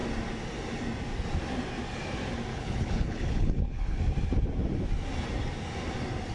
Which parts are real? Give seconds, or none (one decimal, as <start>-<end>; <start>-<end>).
0.0-2.5; 4.0-6.3